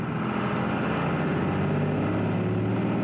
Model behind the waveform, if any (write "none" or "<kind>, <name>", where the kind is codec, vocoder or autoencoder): none